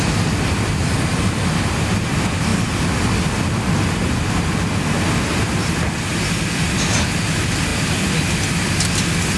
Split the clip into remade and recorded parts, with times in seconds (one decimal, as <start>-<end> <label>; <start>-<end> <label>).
0.0-9.4 recorded